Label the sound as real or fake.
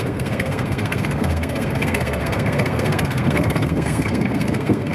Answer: fake